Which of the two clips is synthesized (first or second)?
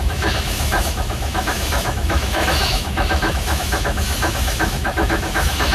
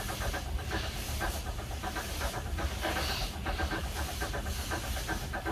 first